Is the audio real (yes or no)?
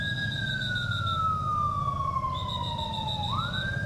yes